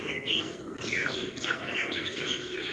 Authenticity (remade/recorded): remade